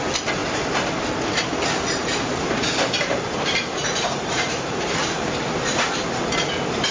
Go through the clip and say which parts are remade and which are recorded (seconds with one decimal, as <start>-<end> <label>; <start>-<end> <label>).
0.0-2.0 recorded; 2.0-5.9 remade; 5.9-6.9 recorded